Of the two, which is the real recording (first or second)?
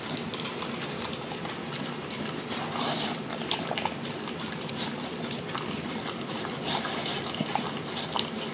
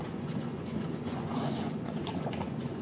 first